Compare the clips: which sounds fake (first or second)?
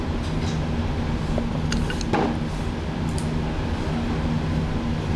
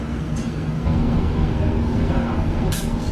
second